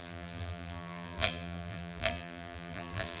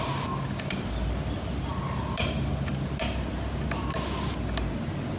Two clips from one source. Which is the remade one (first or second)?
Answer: first